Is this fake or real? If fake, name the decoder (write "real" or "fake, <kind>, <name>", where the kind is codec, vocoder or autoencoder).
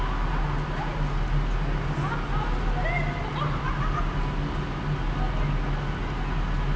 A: real